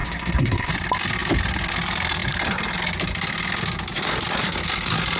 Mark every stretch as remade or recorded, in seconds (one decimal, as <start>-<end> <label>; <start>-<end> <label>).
0.0-0.7 remade; 0.7-5.2 recorded